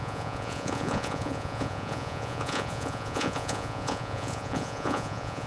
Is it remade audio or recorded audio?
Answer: remade